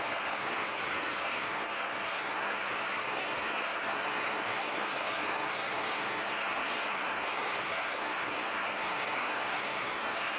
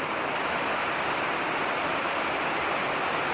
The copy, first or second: first